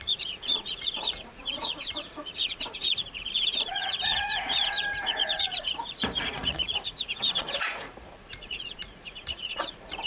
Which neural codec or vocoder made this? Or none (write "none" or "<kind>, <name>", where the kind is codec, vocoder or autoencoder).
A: vocoder, Vocos